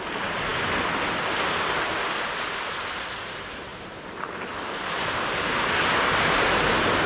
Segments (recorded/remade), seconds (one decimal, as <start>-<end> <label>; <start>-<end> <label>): 0.0-7.1 recorded